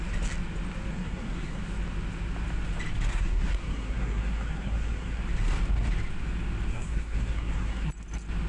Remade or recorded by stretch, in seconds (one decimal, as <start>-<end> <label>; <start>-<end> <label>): 0.0-0.9 recorded; 0.9-1.6 remade; 1.6-3.1 recorded; 3.1-5.2 remade; 5.2-6.7 recorded; 6.7-7.9 remade; 7.9-8.5 recorded